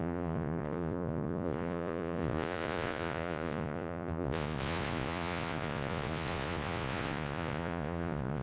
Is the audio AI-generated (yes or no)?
yes